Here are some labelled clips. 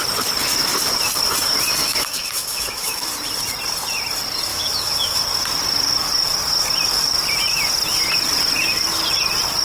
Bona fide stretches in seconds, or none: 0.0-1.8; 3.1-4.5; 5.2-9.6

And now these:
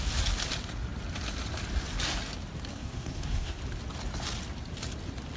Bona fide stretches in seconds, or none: 0.0-2.7; 3.6-5.4